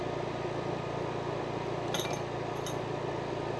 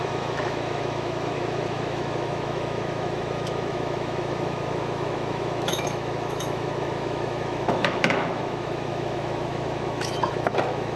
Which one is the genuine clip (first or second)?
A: first